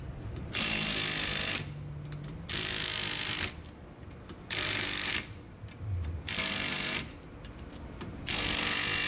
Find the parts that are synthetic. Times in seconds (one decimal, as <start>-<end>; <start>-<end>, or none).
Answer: none